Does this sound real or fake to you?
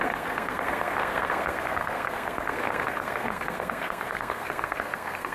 fake